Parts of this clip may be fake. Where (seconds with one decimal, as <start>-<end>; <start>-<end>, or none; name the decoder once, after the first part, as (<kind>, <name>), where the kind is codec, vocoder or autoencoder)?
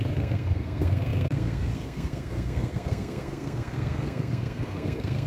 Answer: 0.0-5.3 (codec, SNAC)